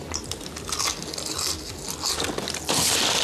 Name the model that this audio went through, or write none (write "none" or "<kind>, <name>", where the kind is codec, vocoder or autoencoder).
none